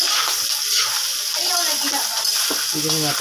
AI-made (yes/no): no